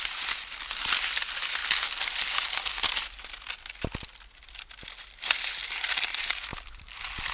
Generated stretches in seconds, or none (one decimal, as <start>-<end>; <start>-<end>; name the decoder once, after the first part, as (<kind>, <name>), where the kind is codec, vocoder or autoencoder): none